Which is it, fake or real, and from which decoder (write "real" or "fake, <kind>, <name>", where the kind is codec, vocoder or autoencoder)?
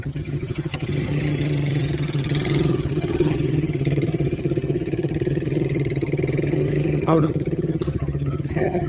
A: fake, vocoder, HiFi-GAN